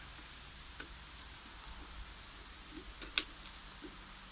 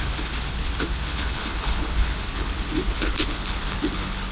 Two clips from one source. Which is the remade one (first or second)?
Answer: second